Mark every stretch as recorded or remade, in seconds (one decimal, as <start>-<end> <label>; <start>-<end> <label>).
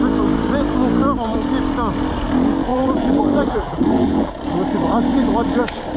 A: 0.0-2.7 recorded; 2.7-4.3 remade; 4.3-5.1 recorded; 5.1-5.6 remade; 5.6-6.0 recorded